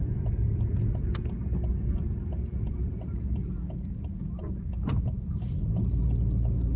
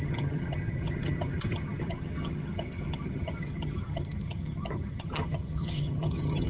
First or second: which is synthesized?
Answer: second